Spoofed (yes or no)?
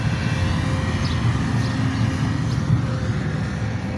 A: no